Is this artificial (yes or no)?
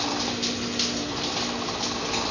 no